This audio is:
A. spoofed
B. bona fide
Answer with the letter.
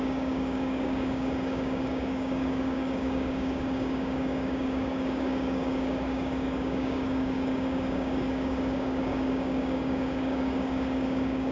A